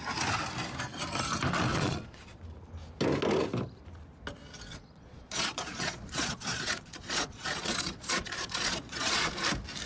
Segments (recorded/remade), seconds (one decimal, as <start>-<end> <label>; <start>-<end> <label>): 0.0-1.7 recorded; 1.7-2.4 remade; 2.4-4.7 recorded; 4.7-9.3 remade; 9.3-9.9 recorded